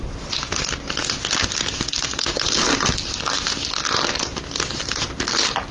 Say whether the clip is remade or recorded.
recorded